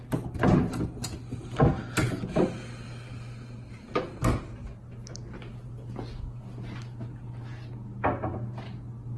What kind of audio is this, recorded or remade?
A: recorded